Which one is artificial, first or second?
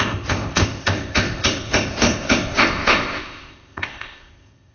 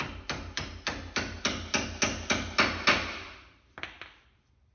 first